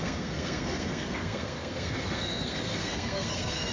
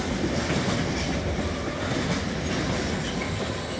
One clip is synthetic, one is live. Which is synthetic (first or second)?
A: first